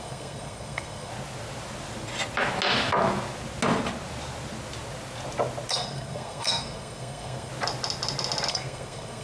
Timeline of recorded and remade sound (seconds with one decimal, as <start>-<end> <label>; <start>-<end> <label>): 0.0-1.1 remade; 1.1-5.7 recorded; 5.7-7.5 remade; 7.5-8.5 recorded; 8.5-9.2 remade